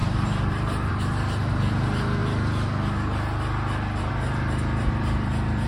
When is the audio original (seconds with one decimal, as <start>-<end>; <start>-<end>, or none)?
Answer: 2.2-4.0

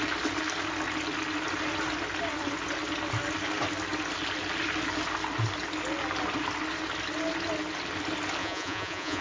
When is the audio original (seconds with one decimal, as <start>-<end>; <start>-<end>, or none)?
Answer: 0.0-8.4